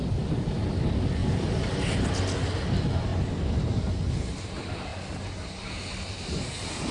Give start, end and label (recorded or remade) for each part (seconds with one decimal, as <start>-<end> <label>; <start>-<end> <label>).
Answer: 0.0-6.9 recorded